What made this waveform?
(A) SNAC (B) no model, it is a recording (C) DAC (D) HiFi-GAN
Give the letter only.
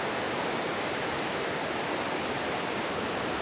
B